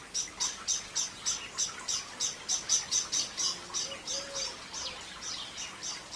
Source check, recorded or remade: recorded